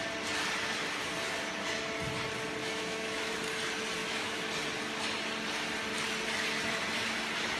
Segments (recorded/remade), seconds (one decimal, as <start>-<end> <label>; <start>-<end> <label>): 0.0-2.6 recorded; 2.6-3.3 remade; 3.3-4.0 recorded; 4.0-4.5 remade; 4.5-7.6 recorded